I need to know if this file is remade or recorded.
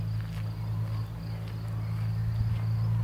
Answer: recorded